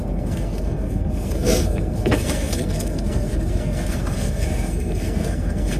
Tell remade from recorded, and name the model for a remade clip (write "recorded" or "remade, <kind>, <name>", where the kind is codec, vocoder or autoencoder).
remade, codec, SNAC